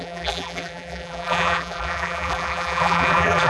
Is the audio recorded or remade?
remade